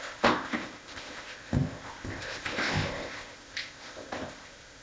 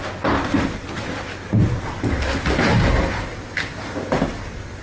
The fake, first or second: first